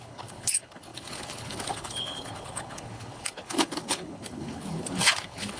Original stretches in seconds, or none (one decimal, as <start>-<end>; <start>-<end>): none